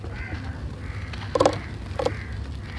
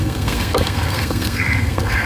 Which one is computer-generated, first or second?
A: second